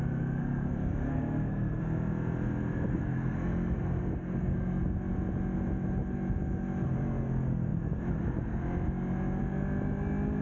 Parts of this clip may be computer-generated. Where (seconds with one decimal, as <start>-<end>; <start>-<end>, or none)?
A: 0.4-1.8; 2.9-4.8